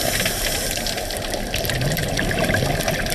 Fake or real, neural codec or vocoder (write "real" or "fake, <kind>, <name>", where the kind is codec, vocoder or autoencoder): real